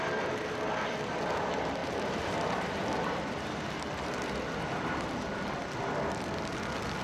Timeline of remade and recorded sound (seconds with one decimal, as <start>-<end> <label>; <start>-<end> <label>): 0.0-1.8 recorded; 1.8-5.0 remade; 5.0-7.0 recorded